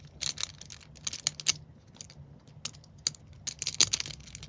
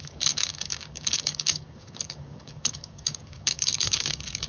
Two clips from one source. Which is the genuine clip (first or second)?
first